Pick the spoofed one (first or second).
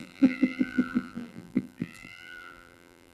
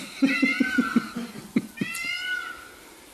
first